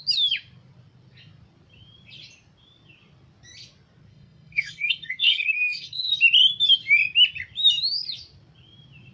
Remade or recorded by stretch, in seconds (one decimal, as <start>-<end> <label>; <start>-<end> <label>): 0.0-4.1 recorded; 4.1-6.1 remade; 6.1-9.1 recorded